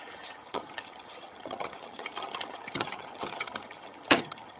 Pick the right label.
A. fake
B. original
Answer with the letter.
A